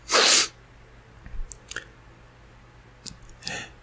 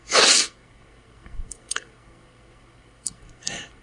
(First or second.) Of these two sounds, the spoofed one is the second